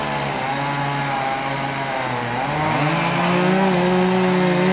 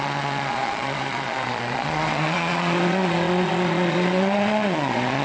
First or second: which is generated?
second